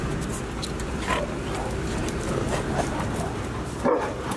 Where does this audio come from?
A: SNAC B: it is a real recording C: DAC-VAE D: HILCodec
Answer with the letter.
B